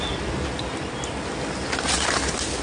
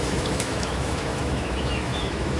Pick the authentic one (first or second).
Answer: first